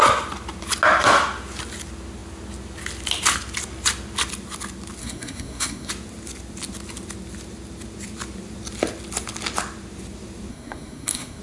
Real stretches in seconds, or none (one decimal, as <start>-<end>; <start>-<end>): 0.0-5.0; 5.9-10.5